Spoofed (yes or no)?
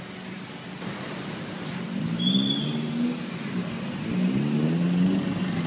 no